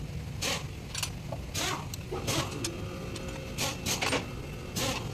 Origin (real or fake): real